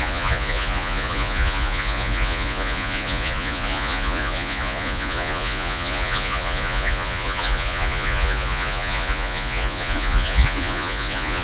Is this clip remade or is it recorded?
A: remade